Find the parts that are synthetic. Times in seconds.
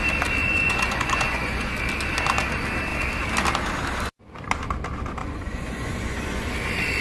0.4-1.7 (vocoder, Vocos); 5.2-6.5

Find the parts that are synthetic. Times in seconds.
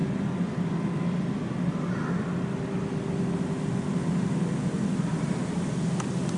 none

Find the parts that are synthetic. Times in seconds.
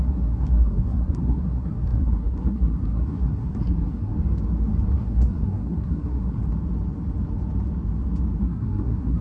0.0-4.1 (codec, SNAC); 5.0-6.4; 8.4-9.2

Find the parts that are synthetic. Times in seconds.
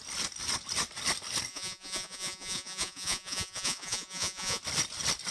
1.5-4.6 (vocoder, Vocos)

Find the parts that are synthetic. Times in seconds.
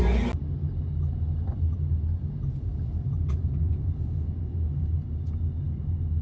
2.3-4.4 (vocoder, Vocos)